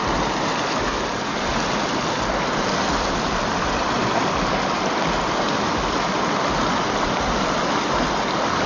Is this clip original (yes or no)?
yes